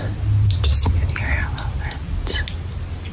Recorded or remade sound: recorded